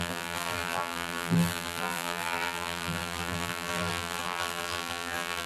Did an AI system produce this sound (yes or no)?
yes